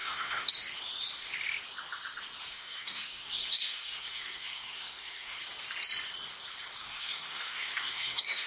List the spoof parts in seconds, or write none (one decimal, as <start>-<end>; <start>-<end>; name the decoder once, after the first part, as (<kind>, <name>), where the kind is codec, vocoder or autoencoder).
0.0-0.5 (codec, SNAC); 2.5-5.4; 6.8-8.5